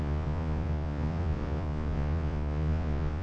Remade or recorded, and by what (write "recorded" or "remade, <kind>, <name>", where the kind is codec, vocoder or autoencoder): remade, vocoder, Vocos